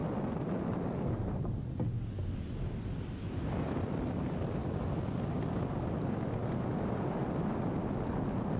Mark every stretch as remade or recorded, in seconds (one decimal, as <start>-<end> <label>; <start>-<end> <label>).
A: 0.0-8.6 recorded